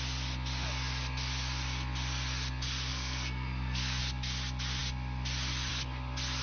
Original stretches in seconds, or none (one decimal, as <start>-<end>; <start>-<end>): 0.0-2.9; 4.0-6.4